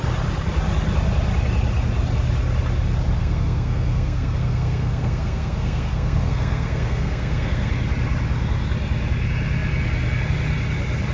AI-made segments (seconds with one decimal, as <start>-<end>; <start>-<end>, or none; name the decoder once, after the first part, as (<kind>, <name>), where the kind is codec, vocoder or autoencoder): 3.2-7.7 (codec, SNAC)